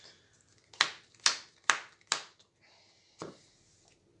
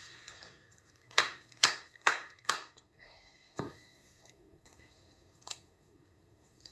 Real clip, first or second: first